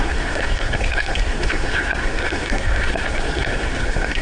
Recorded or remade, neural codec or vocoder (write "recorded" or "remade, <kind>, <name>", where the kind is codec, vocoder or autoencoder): remade, codec, SNAC